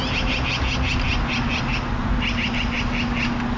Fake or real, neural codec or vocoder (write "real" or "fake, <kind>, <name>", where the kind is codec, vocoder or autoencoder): real